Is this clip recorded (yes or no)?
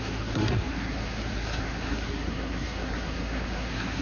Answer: no